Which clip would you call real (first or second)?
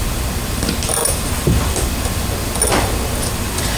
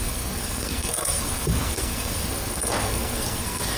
first